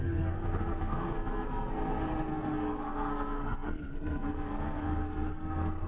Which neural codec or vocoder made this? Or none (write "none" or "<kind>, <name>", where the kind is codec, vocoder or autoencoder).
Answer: codec, SNAC